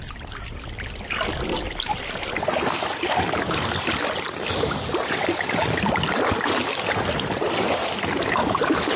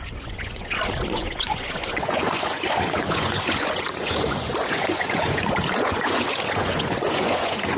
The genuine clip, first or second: first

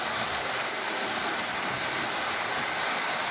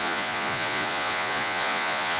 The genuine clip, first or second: first